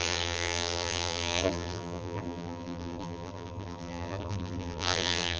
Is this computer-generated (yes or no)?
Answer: yes